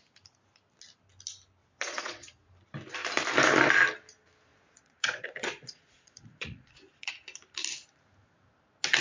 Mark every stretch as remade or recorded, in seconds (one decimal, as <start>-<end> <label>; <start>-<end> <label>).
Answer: 0.0-1.6 recorded; 1.6-2.5 remade; 2.5-4.5 recorded; 4.5-7.1 remade; 7.1-9.0 recorded